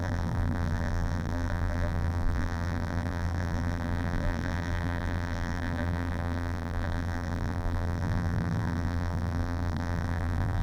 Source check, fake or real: fake